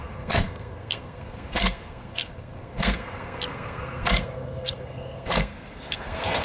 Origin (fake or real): fake